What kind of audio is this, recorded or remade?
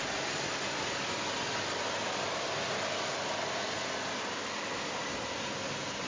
recorded